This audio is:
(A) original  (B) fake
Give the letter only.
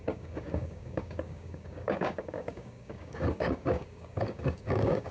B